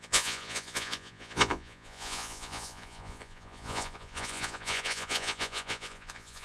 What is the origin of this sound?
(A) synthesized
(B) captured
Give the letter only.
A